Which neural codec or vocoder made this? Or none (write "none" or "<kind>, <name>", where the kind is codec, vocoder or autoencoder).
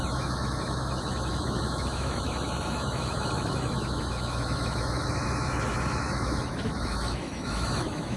autoencoder, DAC-VAE